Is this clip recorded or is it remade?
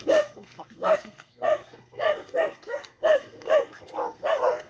remade